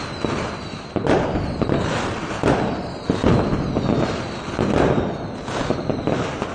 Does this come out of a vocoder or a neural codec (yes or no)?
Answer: no